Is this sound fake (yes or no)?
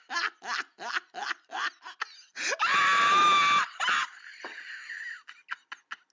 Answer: no